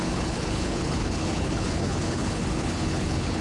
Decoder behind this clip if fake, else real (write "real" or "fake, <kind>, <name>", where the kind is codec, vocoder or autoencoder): fake, codec, HILCodec